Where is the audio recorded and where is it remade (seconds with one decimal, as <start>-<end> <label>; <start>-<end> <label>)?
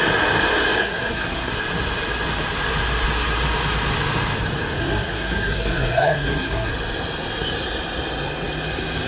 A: 0.0-0.8 recorded; 0.8-1.5 remade; 1.5-4.8 recorded; 4.8-6.7 remade; 6.7-9.1 recorded